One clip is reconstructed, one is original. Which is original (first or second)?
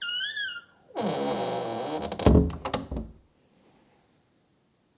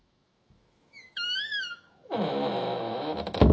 first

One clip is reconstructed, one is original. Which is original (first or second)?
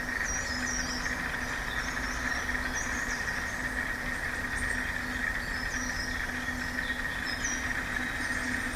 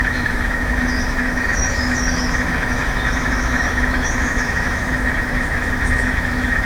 first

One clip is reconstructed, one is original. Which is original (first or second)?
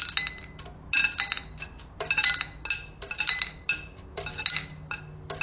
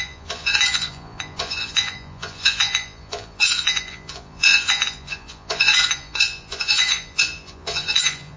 first